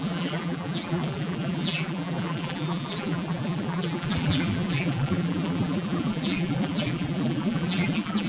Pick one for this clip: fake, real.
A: fake